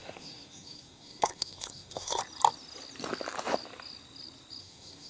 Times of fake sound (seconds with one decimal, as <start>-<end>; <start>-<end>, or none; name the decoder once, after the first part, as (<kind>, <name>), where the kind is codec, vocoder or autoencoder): 0.0-2.2 (codec, SNAC); 4.6-5.1